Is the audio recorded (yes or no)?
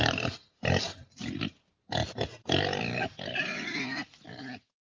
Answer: yes